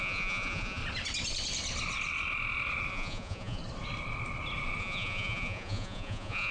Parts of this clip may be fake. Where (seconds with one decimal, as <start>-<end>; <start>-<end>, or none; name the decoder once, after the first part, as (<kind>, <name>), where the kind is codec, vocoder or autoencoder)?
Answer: 0.0-0.8 (vocoder, Vocos); 2.9-3.6; 4.8-6.5